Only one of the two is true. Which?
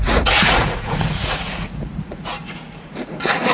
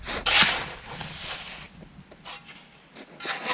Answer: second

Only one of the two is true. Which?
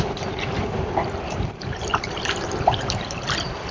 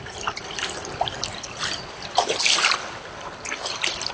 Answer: second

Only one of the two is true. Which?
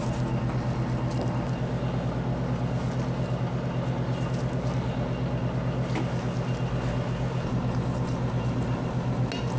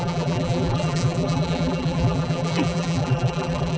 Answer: first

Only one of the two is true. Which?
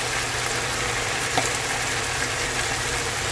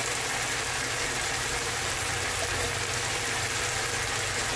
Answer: second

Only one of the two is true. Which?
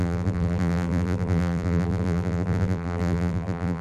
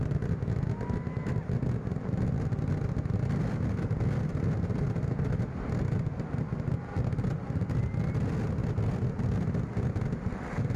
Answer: second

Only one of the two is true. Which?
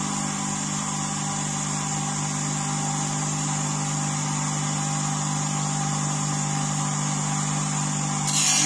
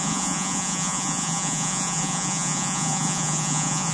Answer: first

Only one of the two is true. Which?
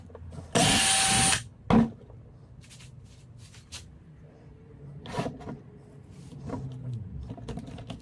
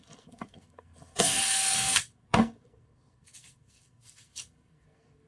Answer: first